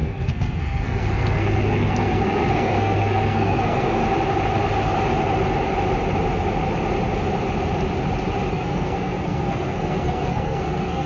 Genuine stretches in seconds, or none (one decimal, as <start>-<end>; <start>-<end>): 4.0-8.5